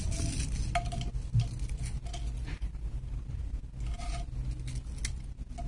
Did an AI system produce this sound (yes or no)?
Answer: no